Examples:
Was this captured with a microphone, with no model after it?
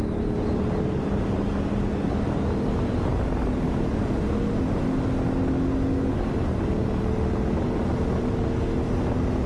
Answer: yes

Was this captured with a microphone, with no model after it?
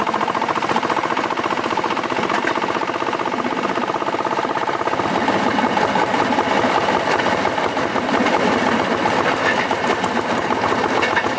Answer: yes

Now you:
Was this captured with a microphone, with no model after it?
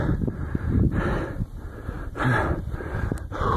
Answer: no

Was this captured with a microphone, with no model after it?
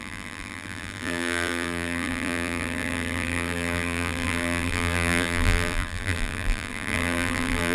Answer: no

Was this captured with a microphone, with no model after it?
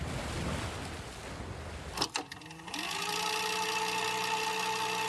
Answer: yes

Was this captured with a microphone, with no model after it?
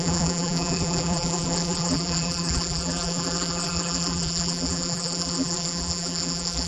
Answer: no